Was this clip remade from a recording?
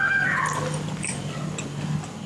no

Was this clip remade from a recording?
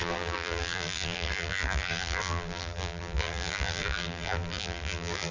yes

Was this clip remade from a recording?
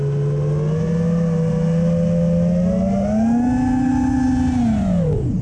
no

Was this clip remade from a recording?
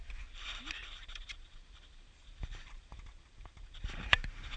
yes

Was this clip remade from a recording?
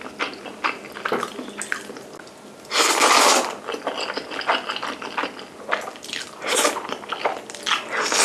no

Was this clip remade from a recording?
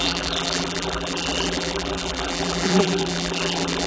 yes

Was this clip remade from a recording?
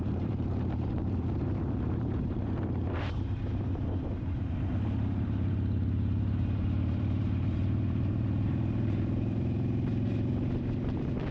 yes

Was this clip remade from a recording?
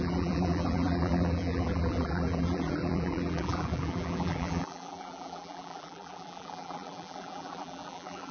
yes